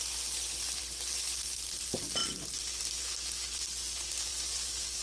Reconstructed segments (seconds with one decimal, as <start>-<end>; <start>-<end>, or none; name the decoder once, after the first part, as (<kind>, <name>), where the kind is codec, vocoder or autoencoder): 2.2-2.8 (vocoder, BigVGAN v2); 4.3-5.0